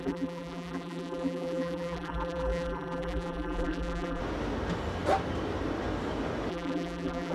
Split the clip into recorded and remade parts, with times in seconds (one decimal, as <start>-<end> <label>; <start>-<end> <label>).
0.0-4.2 remade; 4.2-6.5 recorded; 6.5-7.3 remade

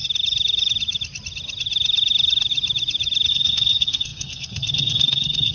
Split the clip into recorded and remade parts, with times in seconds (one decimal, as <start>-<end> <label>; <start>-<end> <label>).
0.0-3.3 recorded; 3.3-5.5 remade

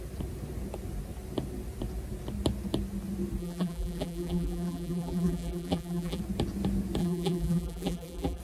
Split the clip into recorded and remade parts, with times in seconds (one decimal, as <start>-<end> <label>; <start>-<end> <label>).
0.0-3.4 recorded; 3.4-6.2 remade; 6.2-7.0 recorded; 7.0-8.4 remade

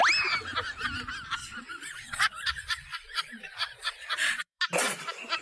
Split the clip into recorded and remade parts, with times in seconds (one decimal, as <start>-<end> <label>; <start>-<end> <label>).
0.0-1.4 recorded; 1.4-4.6 remade; 4.6-5.4 recorded

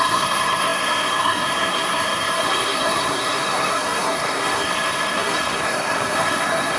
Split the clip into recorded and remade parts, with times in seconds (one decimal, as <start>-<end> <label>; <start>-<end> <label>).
0.0-6.8 remade

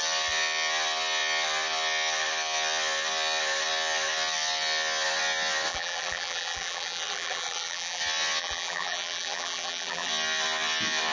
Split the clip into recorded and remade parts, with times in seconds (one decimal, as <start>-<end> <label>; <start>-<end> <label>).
0.0-5.7 recorded; 5.7-8.0 remade; 8.0-8.4 recorded; 8.4-10.1 remade; 10.1-11.1 recorded

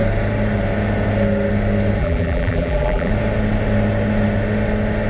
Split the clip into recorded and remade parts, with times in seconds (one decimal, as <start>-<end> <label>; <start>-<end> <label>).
0.0-2.0 recorded; 2.0-3.1 remade; 3.1-5.1 recorded

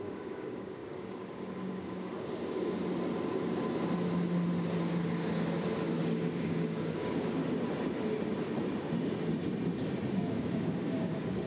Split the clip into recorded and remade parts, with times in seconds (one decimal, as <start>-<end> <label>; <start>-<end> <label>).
0.0-2.8 remade; 2.8-6.0 recorded; 6.0-7.4 remade; 7.4-10.1 recorded; 10.1-11.5 remade